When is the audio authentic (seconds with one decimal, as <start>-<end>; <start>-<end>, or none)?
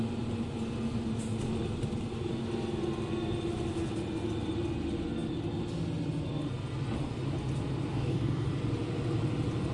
0.0-7.9; 8.5-9.7